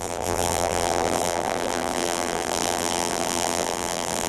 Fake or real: fake